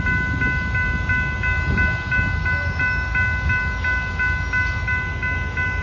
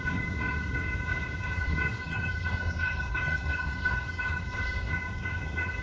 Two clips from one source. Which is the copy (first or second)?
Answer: second